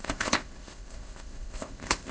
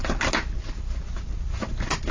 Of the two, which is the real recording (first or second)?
second